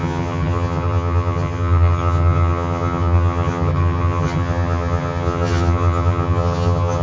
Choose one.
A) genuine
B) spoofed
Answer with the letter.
B